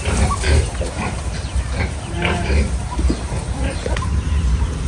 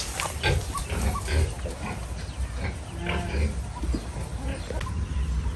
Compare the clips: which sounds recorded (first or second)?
second